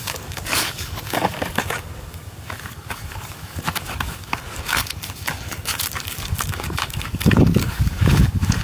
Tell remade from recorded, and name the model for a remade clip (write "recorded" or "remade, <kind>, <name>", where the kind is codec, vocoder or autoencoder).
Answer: remade, codec, DAC